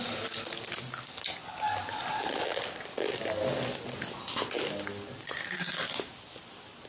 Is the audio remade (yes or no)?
no